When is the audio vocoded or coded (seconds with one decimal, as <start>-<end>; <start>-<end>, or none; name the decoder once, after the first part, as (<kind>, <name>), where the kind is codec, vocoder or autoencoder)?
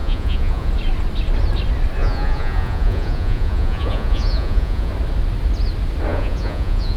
0.0-0.7 (vocoder, Vocos); 2.0-4.9; 6.1-7.0